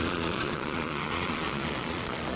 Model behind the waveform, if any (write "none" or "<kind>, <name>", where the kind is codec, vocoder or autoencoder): vocoder, Vocos